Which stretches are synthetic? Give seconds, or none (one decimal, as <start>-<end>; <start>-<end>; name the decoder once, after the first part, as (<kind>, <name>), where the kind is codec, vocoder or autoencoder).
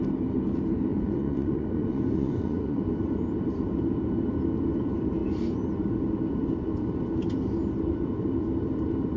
0.9-2.8 (vocoder, Vocos)